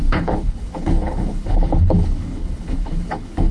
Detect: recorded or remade remade